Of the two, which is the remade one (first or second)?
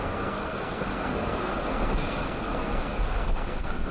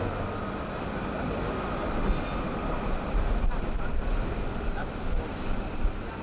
first